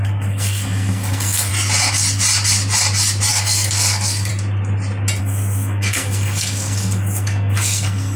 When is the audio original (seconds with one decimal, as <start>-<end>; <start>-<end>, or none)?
1.5-3.3; 4.3-5.2